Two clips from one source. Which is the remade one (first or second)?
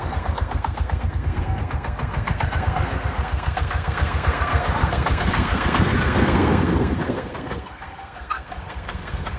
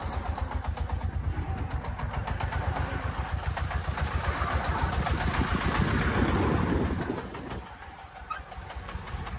first